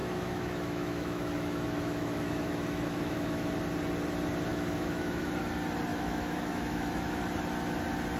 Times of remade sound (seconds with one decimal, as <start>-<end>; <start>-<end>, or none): 0.0-3.5; 4.5-5.3; 5.9-7.2